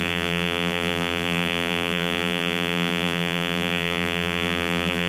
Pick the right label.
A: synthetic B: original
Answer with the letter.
A